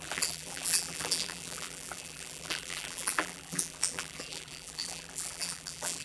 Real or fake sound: fake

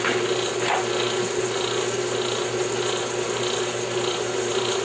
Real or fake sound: real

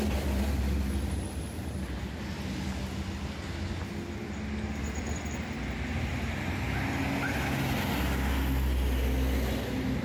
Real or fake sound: real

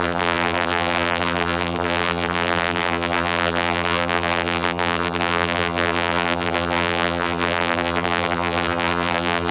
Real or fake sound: fake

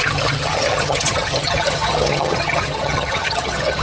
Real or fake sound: fake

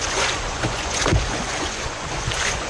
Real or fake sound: fake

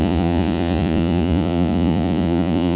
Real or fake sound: fake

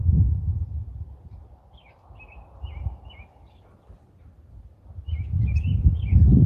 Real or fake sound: real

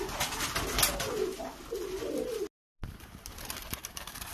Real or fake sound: real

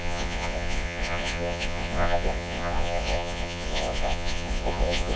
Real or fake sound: fake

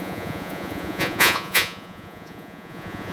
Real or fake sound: fake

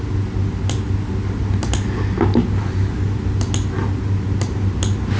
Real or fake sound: real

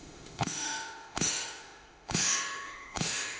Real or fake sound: fake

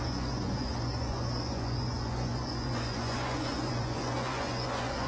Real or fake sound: fake